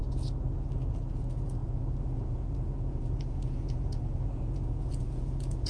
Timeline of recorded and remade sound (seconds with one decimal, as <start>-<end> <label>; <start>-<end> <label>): 0.0-1.1 recorded; 1.1-5.7 remade